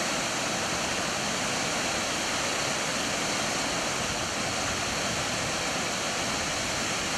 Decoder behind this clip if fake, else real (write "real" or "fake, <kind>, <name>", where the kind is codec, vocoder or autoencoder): real